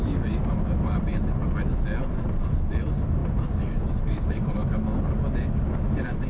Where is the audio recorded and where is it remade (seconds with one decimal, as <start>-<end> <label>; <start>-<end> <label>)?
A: 0.0-1.4 remade; 1.4-2.0 recorded; 2.0-4.6 remade; 4.6-6.3 recorded